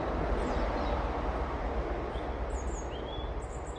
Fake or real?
real